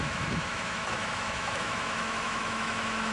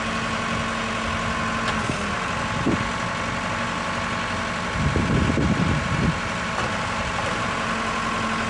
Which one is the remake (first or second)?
first